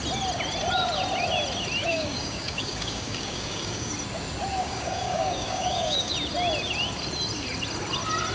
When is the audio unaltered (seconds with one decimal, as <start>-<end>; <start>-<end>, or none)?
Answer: 0.0-1.9; 3.9-4.6; 6.1-8.3